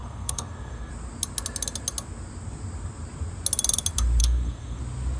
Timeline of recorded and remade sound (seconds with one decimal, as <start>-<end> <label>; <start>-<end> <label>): 0.0-0.9 remade; 0.9-4.2 recorded; 4.2-4.8 remade; 4.8-5.2 recorded